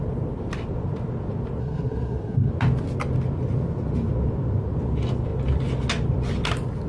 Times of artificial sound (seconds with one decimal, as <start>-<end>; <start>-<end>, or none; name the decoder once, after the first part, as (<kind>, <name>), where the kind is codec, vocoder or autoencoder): 1.6-2.5 (codec, SNAC)